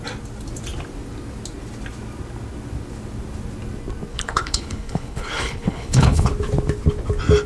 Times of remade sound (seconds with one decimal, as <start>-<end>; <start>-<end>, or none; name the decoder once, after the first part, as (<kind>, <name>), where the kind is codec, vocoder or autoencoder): 4.1-6.3 (codec, HILCodec)